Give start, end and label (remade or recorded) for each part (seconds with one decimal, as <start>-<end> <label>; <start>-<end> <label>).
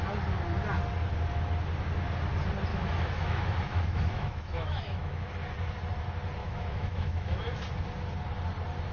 0.0-2.7 recorded; 2.7-5.3 remade; 5.3-6.4 recorded; 6.4-7.4 remade; 7.4-8.9 recorded